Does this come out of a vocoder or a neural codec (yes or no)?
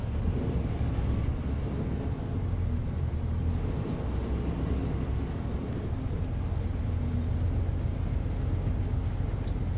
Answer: no